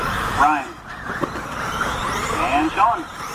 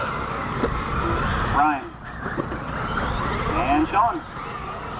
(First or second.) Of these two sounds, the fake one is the first